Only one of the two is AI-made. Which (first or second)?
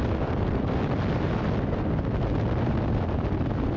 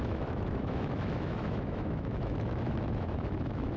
second